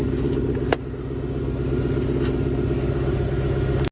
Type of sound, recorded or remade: recorded